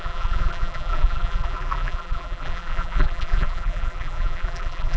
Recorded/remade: remade